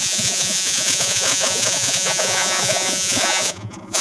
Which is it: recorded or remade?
remade